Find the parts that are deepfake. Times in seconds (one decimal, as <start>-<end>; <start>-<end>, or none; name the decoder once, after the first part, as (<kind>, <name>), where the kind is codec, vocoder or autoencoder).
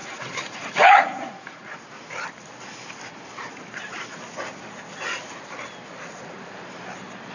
0.0-1.8 (vocoder, Vocos)